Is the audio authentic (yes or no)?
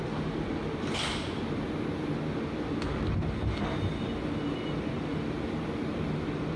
yes